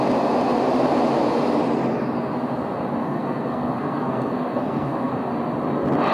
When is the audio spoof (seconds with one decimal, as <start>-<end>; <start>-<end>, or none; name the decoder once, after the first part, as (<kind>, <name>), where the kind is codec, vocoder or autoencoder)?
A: 3.0-5.1 (codec, SNAC)